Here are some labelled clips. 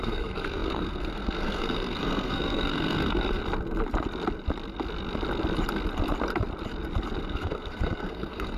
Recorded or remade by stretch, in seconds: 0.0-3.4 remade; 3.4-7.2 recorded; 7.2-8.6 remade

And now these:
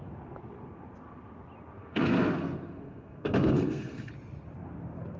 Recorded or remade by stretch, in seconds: 0.0-1.8 recorded; 1.8-4.1 remade; 4.1-5.2 recorded

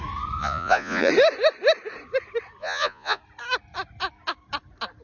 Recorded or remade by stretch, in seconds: 0.0-0.4 recorded; 0.4-1.1 remade; 1.1-2.6 recorded; 2.6-3.2 remade; 3.2-5.0 recorded

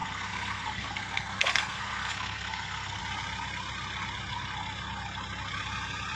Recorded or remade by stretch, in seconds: 0.0-3.0 remade; 3.0-6.1 recorded

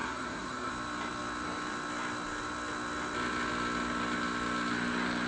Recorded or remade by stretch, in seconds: 0.0-0.7 remade; 0.7-5.3 recorded